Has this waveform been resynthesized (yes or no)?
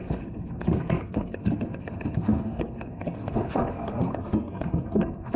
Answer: yes